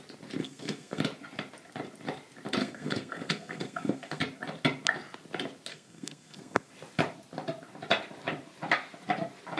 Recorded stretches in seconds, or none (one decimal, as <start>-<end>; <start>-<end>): 0.0-0.4; 1.0-2.6; 4.2-5.7; 6.7-9.6